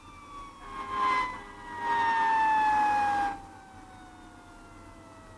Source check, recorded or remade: recorded